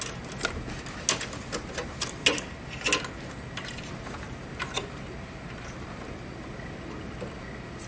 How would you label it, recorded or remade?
recorded